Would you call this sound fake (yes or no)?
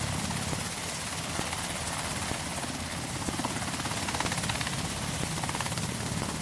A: no